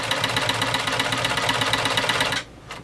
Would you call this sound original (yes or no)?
yes